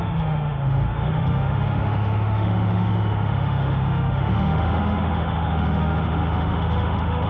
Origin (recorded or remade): remade